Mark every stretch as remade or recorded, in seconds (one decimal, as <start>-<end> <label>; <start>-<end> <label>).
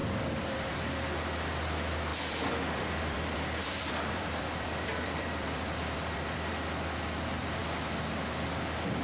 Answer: 0.0-0.7 remade; 0.7-2.1 recorded; 2.1-6.5 remade; 6.5-9.0 recorded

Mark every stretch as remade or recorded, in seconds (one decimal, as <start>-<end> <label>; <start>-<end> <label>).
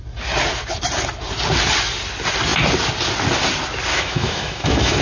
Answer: 0.0-3.9 recorded; 3.9-5.0 remade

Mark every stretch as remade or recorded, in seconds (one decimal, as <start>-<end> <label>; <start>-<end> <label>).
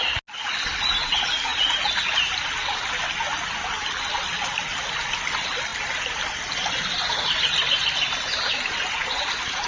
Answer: 0.0-9.7 recorded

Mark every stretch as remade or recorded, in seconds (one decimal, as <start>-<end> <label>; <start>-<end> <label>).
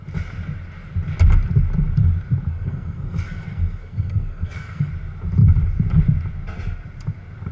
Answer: 0.0-2.5 recorded; 2.5-4.9 remade; 4.9-7.5 recorded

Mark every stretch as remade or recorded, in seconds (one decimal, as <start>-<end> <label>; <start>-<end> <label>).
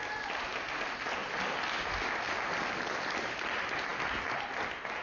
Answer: 0.0-5.0 recorded